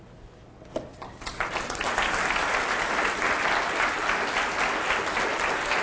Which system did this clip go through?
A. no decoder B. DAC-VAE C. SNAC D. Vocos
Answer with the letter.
A